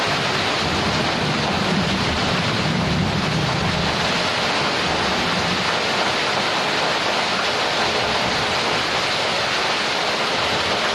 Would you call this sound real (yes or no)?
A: yes